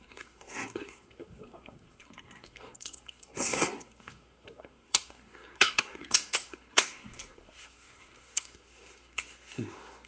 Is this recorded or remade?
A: remade